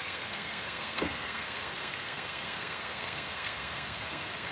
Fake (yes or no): yes